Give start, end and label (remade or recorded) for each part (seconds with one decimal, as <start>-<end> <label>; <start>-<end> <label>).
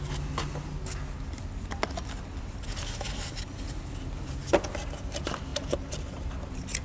0.0-6.8 recorded